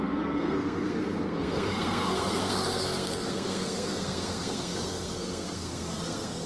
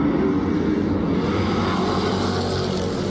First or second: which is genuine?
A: second